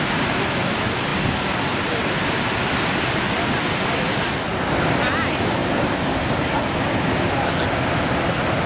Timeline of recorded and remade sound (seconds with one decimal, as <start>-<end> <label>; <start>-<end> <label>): 0.0-5.6 recorded; 5.6-6.6 remade; 6.6-8.7 recorded